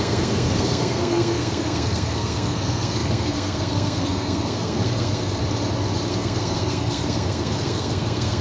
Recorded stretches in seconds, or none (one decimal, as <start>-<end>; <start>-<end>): 5.4-6.1